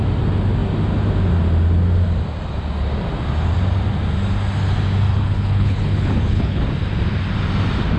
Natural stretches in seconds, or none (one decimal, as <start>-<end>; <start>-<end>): 0.0-5.1; 6.6-8.0

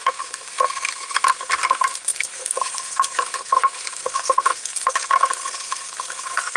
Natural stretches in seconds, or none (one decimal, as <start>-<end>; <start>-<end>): none

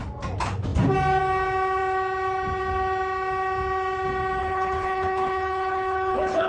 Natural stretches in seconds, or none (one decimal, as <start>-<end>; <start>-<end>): 0.0-4.4

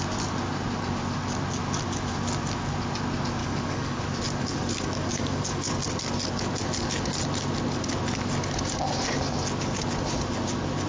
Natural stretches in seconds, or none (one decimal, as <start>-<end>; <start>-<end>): 0.0-3.4; 4.0-4.4; 5.7-10.9

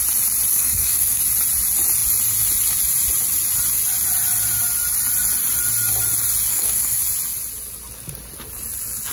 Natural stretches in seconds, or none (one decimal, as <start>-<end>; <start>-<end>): 0.0-0.5; 1.2-6.5; 7.0-9.1

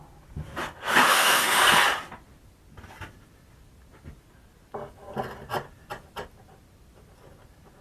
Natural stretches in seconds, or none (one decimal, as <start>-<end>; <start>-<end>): 0.0-0.9; 1.6-7.8